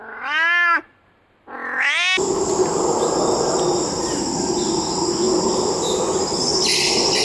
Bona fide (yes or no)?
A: yes